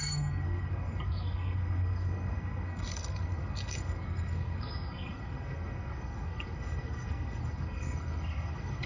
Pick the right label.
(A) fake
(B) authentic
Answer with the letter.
A